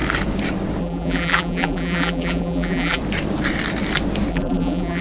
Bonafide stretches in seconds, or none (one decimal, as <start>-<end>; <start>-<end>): 0.0-0.8; 3.0-4.3